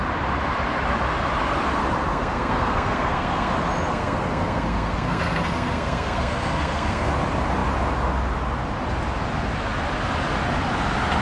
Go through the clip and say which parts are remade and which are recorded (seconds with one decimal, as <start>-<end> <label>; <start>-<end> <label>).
0.0-2.1 recorded; 2.1-3.5 remade; 3.5-3.9 recorded; 3.9-7.1 remade; 7.1-11.2 recorded